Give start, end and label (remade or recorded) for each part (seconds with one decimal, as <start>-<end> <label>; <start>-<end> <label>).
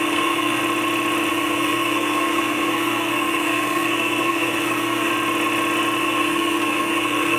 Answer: 0.0-0.6 remade; 0.6-1.3 recorded; 1.3-5.1 remade; 5.1-6.0 recorded; 6.0-7.4 remade